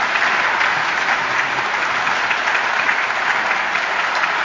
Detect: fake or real real